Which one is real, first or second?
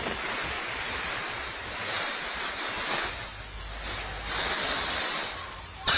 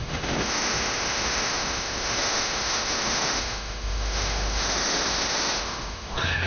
first